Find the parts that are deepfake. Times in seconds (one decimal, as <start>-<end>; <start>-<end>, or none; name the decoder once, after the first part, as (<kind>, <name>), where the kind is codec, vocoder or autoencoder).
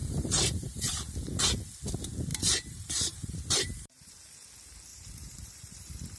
0.0-1.0 (vocoder, BigVGAN v2); 2.3-4.1; 4.9-6.2